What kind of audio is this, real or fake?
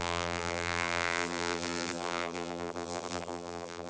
fake